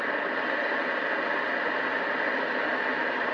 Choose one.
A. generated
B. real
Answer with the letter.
B